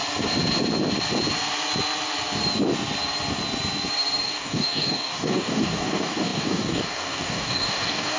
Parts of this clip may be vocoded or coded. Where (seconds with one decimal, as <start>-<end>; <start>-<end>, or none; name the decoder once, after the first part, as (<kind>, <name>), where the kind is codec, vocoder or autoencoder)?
4.2-8.2 (codec, DAC)